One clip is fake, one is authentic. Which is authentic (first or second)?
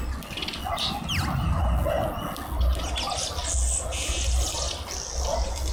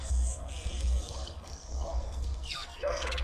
first